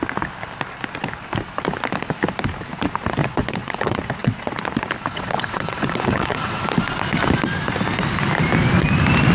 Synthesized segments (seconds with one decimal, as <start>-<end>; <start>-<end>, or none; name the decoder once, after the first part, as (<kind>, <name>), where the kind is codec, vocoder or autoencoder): 3.2-4.5 (vocoder, WaveNeXt); 5.1-6.6